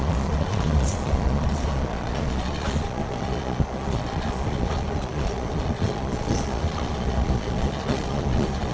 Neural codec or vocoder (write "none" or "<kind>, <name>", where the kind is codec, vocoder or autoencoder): vocoder, Vocos